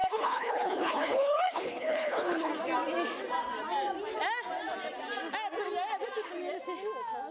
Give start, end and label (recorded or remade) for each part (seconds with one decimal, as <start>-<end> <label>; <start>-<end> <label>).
0.0-2.5 remade; 2.5-7.3 recorded

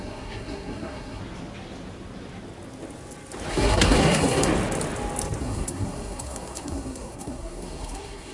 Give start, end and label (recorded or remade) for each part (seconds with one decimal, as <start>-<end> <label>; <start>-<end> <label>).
0.0-1.2 remade; 1.2-3.5 recorded; 3.5-4.5 remade; 4.5-5.4 recorded; 5.4-8.3 remade

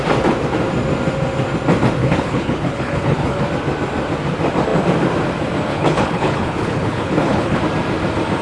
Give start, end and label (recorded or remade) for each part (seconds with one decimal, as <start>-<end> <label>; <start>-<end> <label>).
0.0-2.0 recorded; 2.0-3.4 remade; 3.4-5.7 recorded; 5.7-7.6 remade; 7.6-8.4 recorded

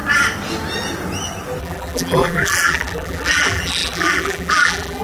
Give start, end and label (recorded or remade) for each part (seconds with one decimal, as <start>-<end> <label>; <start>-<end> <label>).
0.0-1.6 recorded; 1.6-5.0 remade

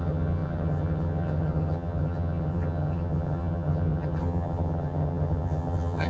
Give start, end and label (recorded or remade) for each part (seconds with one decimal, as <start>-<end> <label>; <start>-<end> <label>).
0.0-6.1 remade

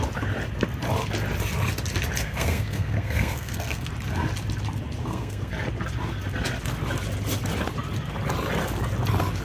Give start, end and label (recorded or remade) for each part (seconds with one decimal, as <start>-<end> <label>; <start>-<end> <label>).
0.0-2.2 recorded; 2.2-3.9 remade; 3.9-5.0 recorded; 5.0-5.5 remade; 5.5-9.4 recorded